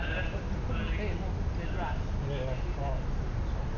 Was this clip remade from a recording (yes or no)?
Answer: no